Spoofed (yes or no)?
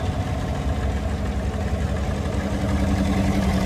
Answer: no